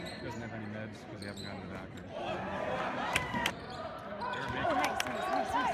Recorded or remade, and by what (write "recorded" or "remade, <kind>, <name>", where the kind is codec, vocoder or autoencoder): recorded